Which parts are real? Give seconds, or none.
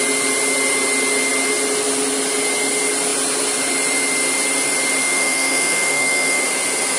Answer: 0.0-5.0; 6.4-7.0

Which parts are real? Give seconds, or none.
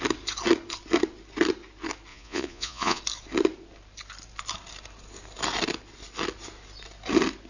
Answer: 0.0-2.1; 3.0-7.5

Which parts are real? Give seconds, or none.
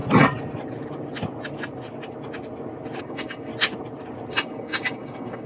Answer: 0.0-3.0; 3.5-4.3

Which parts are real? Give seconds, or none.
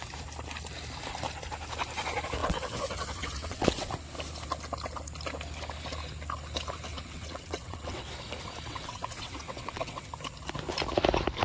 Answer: 0.0-2.4; 3.9-6.9; 8.1-8.7; 10.1-11.4